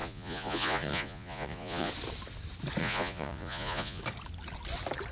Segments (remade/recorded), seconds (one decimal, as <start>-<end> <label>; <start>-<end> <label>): 0.0-1.9 remade; 1.9-2.8 recorded; 2.8-4.0 remade; 4.0-5.1 recorded